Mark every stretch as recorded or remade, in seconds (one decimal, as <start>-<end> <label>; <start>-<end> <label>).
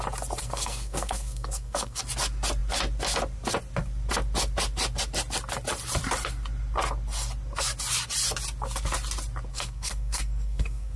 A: 0.0-0.4 recorded; 0.4-2.0 remade; 2.0-9.5 recorded; 9.5-11.0 remade